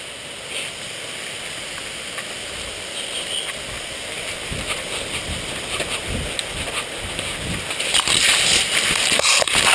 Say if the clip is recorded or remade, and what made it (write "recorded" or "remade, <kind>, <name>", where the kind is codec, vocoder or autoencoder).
recorded